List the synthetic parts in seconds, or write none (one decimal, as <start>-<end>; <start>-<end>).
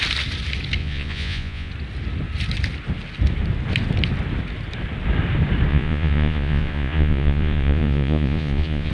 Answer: 0.8-1.7; 5.7-8.9